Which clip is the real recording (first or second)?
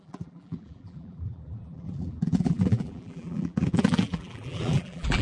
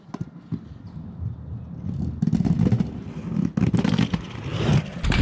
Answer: second